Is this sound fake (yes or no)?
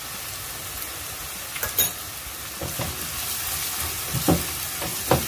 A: no